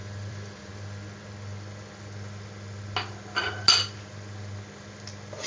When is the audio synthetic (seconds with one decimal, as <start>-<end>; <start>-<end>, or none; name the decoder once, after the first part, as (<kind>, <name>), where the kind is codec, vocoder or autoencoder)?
0.0-0.7 (vocoder, BigVGAN v2)